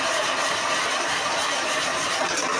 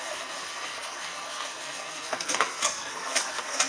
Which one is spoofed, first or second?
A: second